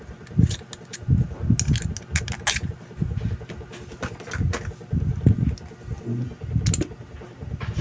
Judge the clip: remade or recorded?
recorded